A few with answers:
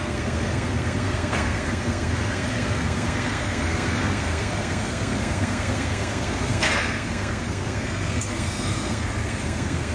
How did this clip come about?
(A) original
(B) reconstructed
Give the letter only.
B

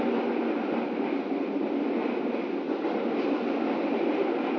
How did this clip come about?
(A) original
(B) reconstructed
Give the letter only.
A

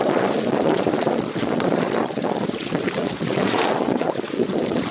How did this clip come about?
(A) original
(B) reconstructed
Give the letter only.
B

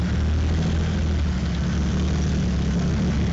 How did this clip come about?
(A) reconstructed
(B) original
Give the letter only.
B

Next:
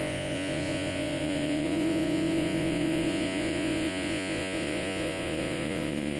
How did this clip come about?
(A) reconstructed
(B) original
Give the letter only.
A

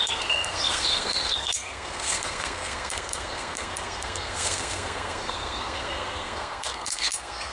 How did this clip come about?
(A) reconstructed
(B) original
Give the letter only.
A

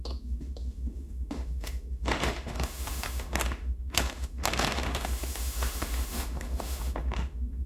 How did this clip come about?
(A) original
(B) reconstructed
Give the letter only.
B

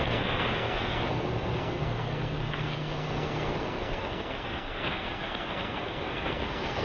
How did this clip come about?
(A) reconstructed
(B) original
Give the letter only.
A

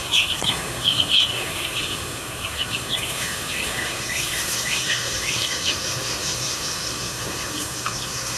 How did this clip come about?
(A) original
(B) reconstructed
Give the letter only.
B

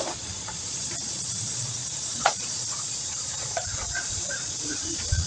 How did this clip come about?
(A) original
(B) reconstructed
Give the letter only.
B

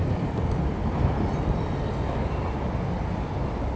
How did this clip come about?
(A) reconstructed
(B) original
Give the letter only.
B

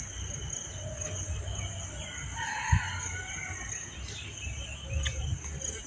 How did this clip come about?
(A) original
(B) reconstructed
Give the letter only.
A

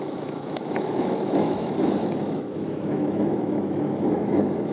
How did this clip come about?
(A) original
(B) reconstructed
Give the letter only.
B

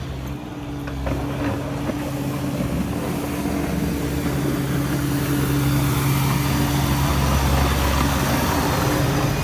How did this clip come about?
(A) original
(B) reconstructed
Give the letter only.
A